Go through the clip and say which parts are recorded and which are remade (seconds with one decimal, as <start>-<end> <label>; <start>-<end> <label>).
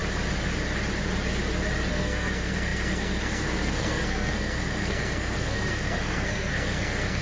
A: 0.0-1.9 recorded; 1.9-7.2 remade